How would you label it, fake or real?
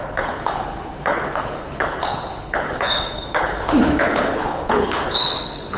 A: fake